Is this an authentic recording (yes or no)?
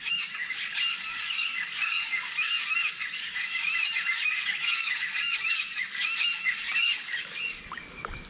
no